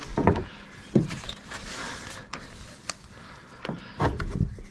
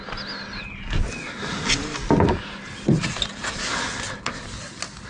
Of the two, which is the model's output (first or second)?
first